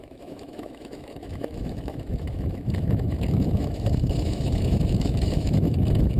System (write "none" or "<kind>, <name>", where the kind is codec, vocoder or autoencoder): autoencoder, DAC-VAE